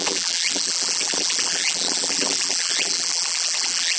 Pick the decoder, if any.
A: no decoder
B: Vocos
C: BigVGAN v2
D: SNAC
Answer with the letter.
C